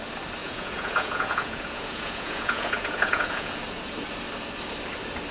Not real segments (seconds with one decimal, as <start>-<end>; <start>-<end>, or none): 0.4-3.6